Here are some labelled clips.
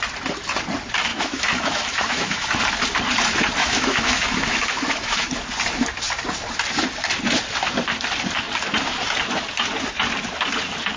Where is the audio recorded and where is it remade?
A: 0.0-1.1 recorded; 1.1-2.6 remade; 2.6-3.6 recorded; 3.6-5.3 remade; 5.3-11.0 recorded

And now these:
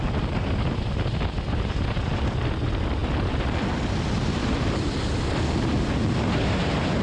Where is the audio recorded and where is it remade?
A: 0.0-7.0 recorded